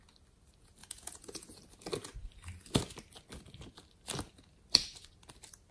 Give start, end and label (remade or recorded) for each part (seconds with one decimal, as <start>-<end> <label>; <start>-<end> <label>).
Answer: 0.0-0.8 recorded; 0.8-1.6 remade; 1.6-5.7 recorded